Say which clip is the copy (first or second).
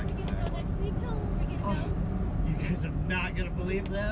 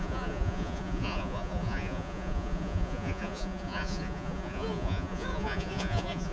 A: second